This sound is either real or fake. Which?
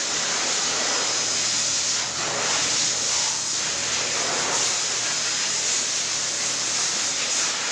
real